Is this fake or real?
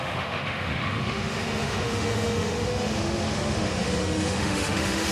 fake